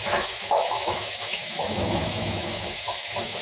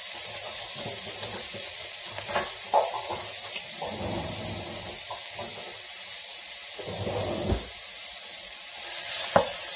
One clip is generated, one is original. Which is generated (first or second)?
first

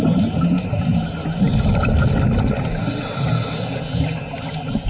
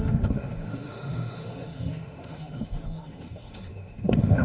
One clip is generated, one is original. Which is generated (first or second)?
second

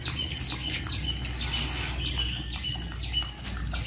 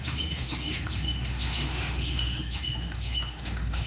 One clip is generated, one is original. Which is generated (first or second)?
second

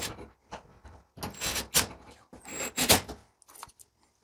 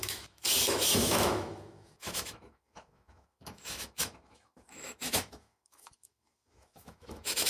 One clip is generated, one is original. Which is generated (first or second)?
second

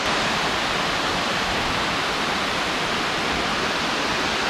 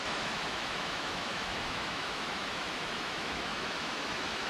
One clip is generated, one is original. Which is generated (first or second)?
second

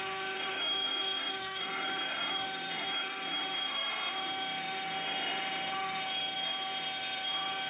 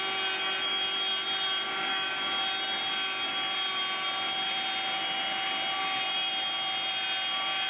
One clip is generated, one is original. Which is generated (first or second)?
first